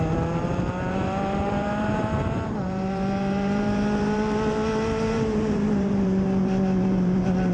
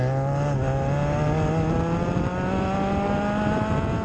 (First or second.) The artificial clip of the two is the first